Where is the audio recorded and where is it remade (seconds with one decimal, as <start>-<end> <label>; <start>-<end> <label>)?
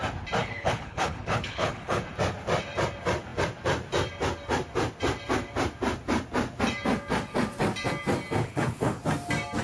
0.0-0.4 recorded; 0.4-2.0 remade; 2.0-8.4 recorded; 8.4-9.0 remade; 9.0-9.6 recorded